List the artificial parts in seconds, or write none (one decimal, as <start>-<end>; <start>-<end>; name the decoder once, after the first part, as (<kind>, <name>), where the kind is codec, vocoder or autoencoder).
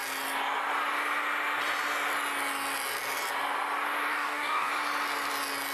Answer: 4.1-4.7 (codec, DAC)